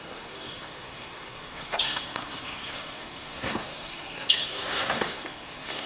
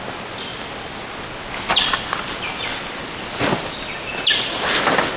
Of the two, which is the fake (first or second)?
first